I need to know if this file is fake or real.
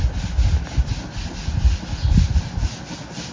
real